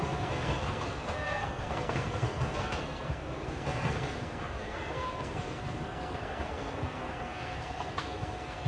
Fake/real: fake